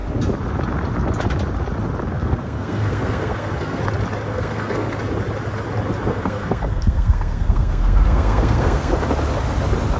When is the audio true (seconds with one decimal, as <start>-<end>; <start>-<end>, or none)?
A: 0.0-2.1; 3.8-4.3; 5.0-6.1; 8.9-10.0